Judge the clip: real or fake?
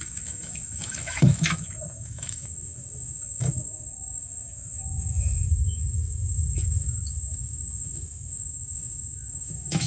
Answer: fake